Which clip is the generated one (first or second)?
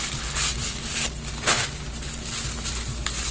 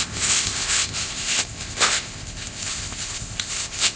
second